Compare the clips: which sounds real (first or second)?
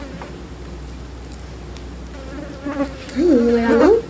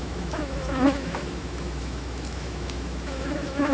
first